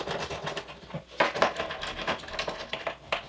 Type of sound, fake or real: real